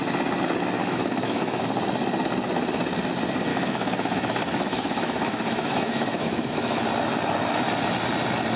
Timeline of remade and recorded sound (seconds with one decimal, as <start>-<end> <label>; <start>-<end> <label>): 0.0-0.8 recorded; 0.8-1.6 remade; 1.6-3.5 recorded; 3.5-6.8 remade; 6.8-8.6 recorded